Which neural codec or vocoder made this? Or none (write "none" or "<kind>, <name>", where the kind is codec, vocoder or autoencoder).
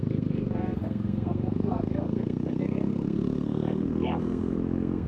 codec, SNAC